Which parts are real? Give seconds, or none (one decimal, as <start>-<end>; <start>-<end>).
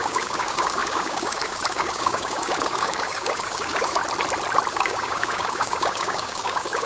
4.0-4.7